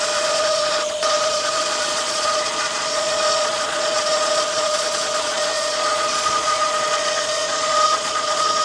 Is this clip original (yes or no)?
no